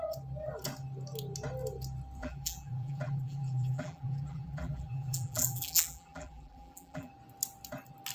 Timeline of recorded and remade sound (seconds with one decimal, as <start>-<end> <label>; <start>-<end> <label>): 0.0-2.2 recorded; 2.2-7.1 remade; 7.1-8.1 recorded